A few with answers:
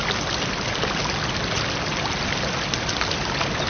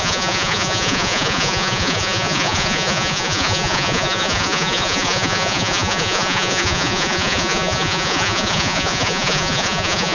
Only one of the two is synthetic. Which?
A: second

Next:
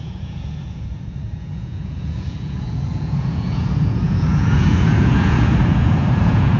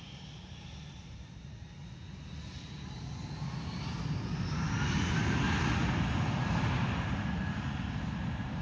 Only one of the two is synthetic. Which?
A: first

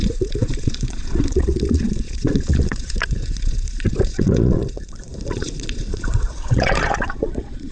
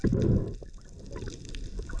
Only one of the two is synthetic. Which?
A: first